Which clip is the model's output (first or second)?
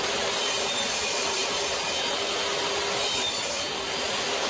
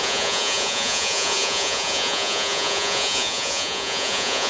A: second